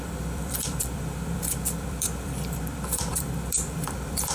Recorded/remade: remade